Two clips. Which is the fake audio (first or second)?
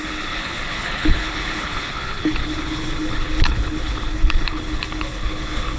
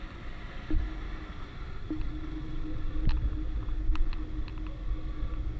first